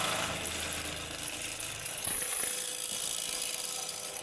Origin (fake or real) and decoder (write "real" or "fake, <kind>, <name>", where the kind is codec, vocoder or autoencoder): real